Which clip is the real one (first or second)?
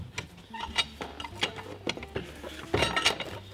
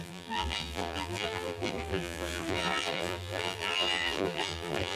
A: first